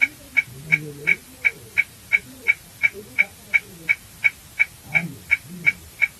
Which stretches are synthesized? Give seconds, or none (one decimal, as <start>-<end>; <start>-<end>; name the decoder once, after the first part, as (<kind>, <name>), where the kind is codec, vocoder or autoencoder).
0.0-6.2 (vocoder, BigVGAN v2)